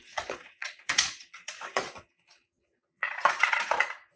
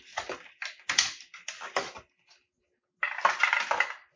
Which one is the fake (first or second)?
first